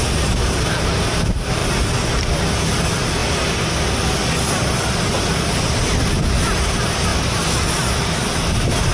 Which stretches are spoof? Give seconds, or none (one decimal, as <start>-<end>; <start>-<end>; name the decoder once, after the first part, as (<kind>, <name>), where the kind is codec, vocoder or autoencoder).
none